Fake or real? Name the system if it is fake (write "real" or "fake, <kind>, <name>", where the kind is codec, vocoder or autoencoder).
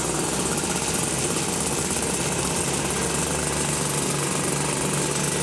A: real